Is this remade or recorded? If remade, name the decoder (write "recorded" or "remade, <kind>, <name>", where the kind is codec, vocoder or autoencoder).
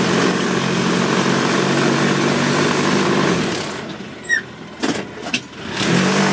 recorded